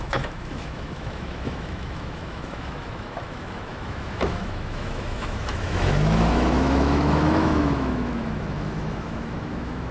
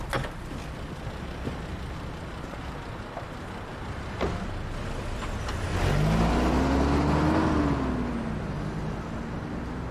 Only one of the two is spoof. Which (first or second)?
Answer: first